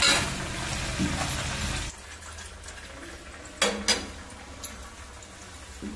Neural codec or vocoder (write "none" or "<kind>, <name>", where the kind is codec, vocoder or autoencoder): none